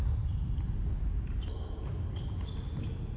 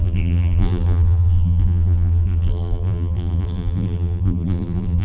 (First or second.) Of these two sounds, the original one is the first